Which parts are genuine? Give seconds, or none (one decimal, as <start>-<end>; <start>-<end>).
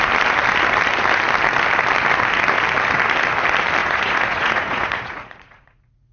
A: 0.0-3.8